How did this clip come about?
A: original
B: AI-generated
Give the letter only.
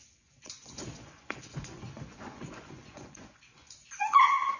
B